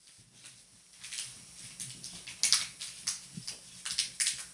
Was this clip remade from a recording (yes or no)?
no